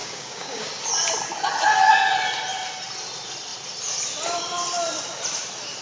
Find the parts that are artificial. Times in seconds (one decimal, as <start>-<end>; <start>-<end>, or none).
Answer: 0.0-0.7